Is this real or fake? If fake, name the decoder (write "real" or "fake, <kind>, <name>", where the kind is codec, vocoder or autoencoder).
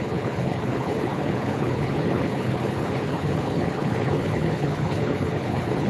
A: fake, codec, HILCodec